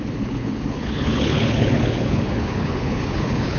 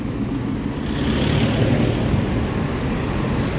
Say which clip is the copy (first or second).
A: first